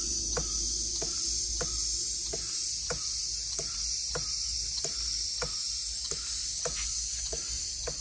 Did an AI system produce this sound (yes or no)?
no